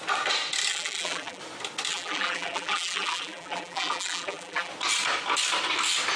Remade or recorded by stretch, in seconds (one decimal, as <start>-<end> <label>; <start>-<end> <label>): 0.0-0.7 recorded; 0.7-1.4 remade; 1.4-1.9 recorded; 1.9-4.7 remade; 4.7-6.2 recorded